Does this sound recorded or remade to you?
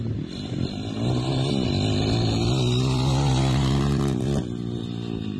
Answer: recorded